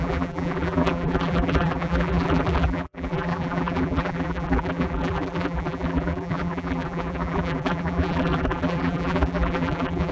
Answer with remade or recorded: remade